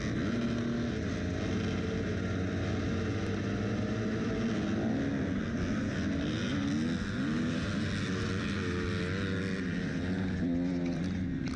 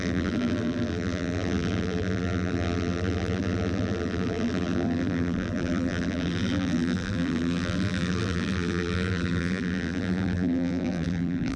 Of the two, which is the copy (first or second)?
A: second